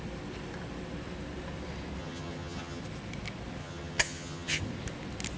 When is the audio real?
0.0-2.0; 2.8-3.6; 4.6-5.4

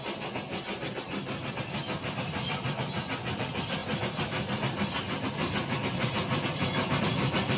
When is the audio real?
0.0-7.6

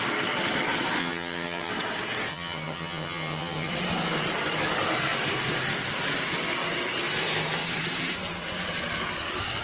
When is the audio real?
0.0-1.0; 1.7-2.3; 3.7-9.6

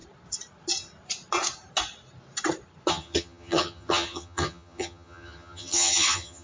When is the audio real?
0.0-2.9

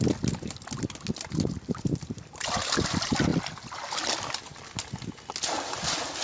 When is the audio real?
0.0-6.2

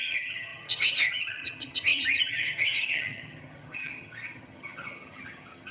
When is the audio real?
none